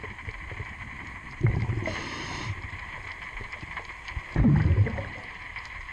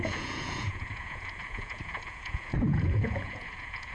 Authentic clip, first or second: first